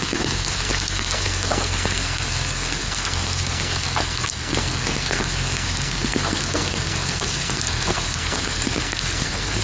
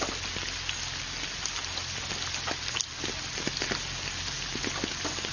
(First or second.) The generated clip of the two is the first